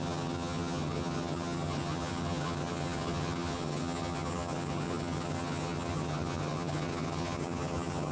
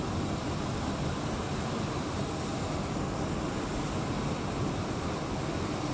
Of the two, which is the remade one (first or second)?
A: first